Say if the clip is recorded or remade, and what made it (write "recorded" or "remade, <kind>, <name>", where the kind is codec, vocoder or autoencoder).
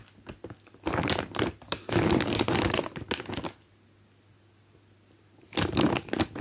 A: recorded